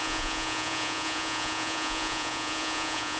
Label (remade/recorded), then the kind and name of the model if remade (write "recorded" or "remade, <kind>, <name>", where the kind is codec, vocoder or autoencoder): remade, vocoder, Vocos